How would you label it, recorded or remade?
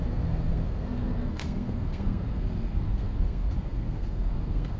remade